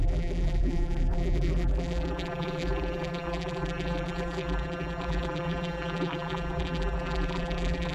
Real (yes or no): no